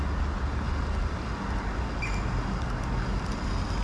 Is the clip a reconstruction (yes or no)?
no